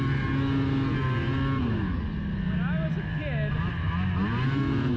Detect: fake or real real